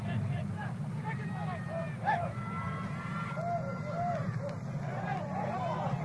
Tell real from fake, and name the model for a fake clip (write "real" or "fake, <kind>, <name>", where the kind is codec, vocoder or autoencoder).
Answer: real